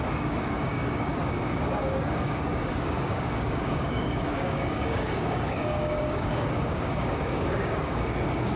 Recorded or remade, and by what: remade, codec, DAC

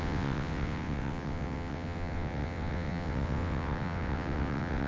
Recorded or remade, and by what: remade, vocoder, WaveNeXt